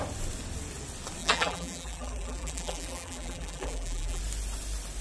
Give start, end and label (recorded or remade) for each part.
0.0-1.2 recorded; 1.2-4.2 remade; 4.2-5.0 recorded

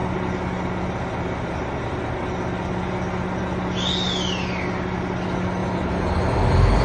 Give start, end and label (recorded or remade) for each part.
0.0-5.6 recorded; 5.6-6.1 remade; 6.1-6.8 recorded

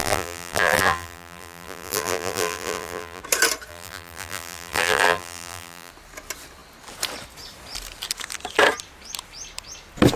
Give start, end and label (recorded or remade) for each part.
0.0-3.2 remade; 3.2-3.7 recorded; 3.7-5.9 remade; 5.9-10.2 recorded

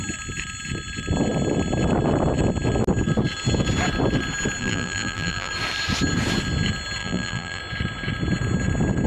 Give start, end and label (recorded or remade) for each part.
0.0-4.6 recorded; 4.6-5.5 remade; 5.5-7.0 recorded; 7.0-7.6 remade; 7.6-9.1 recorded